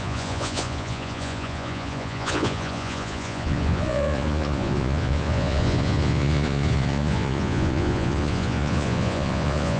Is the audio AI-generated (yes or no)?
yes